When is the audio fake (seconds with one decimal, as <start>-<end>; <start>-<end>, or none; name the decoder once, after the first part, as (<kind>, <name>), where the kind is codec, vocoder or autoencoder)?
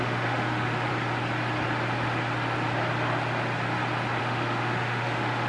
0.0-0.9 (autoencoder, DAC-VAE); 4.2-5.5